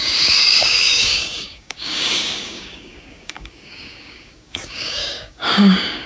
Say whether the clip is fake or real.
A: fake